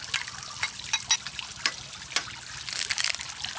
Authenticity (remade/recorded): recorded